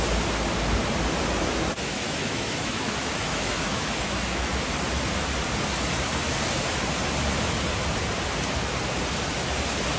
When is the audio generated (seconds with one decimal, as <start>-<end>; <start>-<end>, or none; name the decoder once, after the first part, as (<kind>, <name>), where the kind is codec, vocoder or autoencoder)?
1.9-4.5 (autoencoder, DAC-VAE)